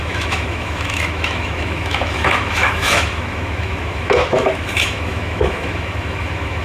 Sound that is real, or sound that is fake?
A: fake